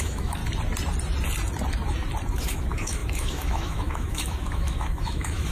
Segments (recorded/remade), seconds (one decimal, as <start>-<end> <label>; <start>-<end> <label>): 0.0-0.4 remade; 0.4-2.3 recorded; 2.3-5.5 remade